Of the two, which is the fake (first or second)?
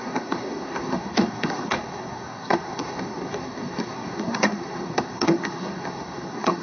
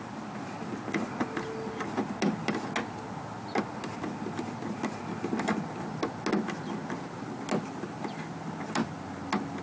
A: first